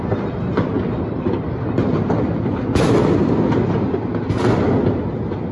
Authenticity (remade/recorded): recorded